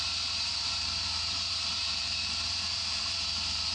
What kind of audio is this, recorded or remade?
remade